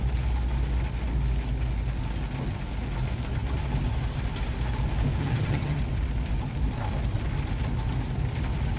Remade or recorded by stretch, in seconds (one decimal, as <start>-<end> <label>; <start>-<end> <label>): 0.0-5.2 recorded; 5.2-5.8 remade; 5.8-8.8 recorded